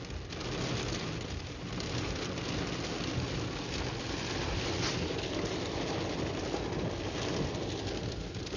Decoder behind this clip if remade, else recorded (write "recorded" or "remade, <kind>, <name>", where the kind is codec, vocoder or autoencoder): recorded